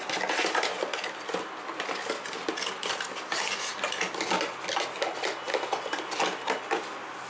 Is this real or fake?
real